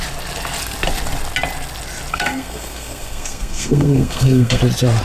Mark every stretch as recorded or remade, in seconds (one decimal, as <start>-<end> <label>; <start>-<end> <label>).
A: 0.0-2.1 recorded; 2.1-4.6 remade; 4.6-5.0 recorded